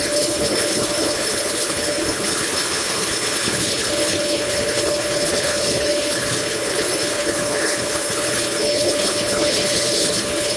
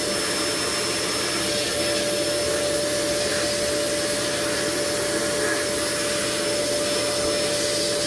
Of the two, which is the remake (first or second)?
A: first